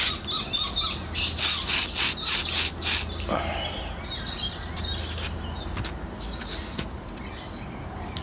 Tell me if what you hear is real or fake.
real